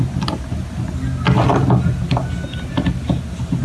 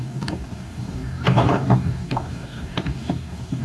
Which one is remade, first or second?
second